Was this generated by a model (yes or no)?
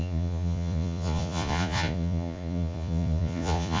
yes